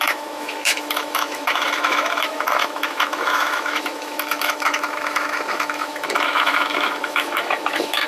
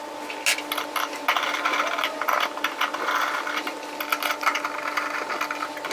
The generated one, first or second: first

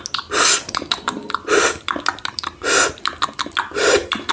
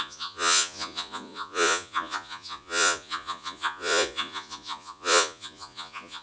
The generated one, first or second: second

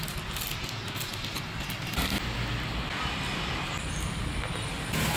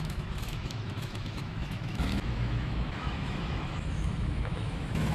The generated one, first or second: second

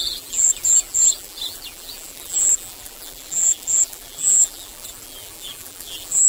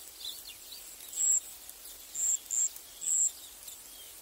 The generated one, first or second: first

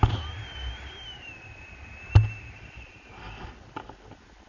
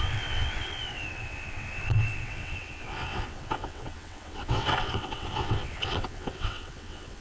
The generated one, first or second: second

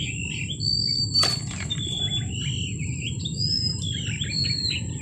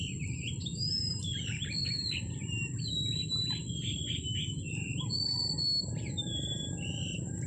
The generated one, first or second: second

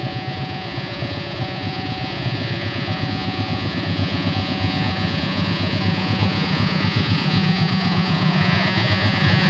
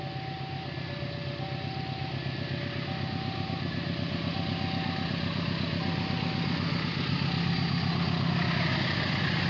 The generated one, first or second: first